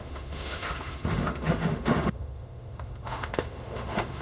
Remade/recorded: remade